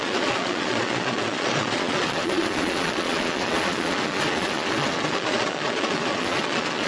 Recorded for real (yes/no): no